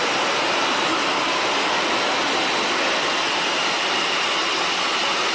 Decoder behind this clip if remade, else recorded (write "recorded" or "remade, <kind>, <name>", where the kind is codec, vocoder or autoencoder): recorded